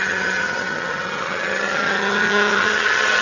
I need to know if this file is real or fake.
fake